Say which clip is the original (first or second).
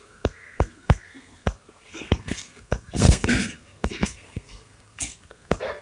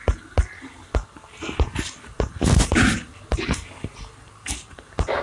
second